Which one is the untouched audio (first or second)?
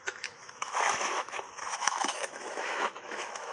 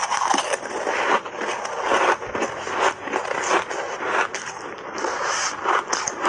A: second